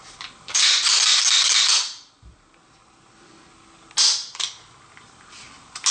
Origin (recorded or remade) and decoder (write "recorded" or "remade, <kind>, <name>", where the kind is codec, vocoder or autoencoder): recorded